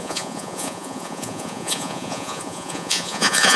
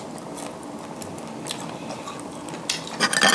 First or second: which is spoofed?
first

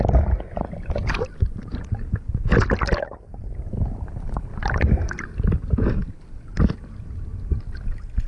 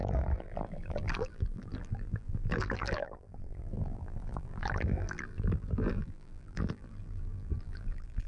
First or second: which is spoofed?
second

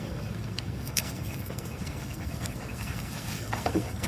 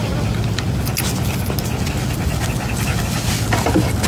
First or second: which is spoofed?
first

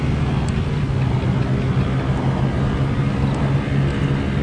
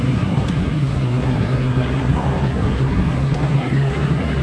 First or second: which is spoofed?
second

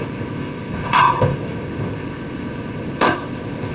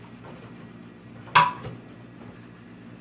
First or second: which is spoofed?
first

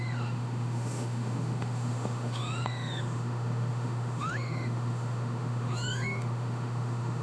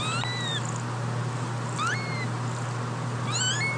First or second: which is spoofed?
first